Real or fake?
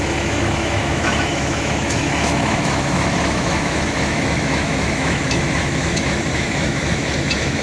fake